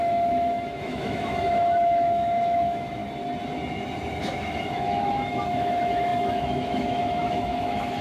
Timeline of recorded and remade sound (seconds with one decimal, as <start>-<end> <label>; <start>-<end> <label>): 0.0-3.0 remade; 3.0-4.2 recorded; 4.2-8.0 remade